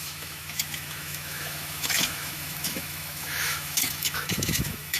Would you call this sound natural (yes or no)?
no